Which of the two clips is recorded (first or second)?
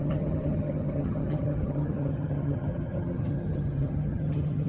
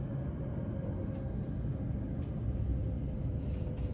second